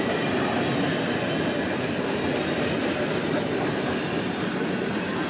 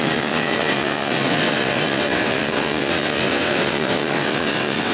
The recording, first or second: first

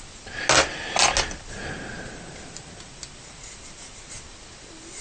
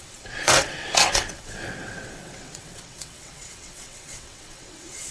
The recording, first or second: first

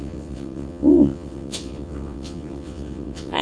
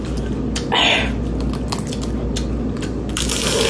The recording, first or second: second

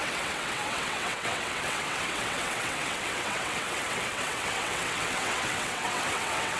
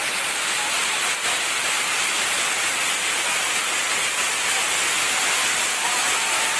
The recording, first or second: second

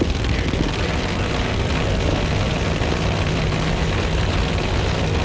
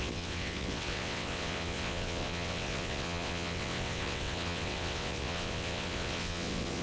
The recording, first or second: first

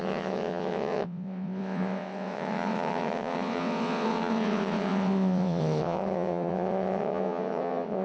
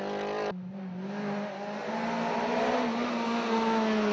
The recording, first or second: second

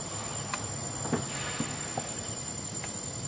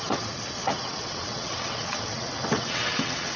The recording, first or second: first